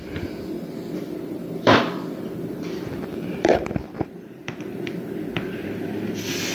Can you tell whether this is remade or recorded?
remade